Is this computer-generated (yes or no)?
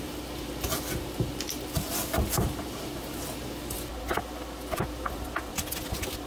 no